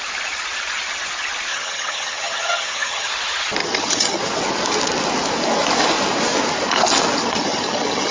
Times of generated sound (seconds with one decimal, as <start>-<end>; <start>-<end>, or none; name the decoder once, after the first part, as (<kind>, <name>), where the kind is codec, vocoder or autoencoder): 1.5-3.1 (vocoder, HiFi-GAN); 3.6-4.2; 7.2-8.1